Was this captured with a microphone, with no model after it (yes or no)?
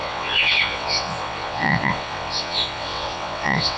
no